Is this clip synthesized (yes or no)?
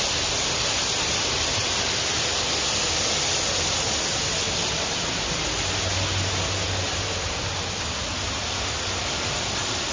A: no